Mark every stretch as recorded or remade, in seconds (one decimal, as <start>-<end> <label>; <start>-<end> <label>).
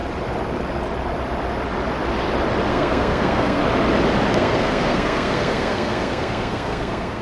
0.0-2.7 recorded; 2.7-3.6 remade; 3.6-4.3 recorded; 4.3-7.2 remade